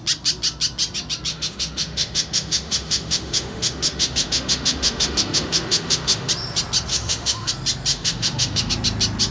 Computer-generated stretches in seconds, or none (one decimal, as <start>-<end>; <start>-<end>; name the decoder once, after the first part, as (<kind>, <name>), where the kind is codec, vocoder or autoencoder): 1.3-6.3 (autoencoder, DAC-VAE); 6.9-7.5; 7.9-8.7